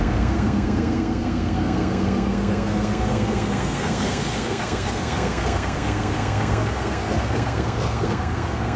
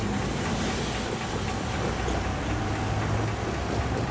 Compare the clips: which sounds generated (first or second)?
first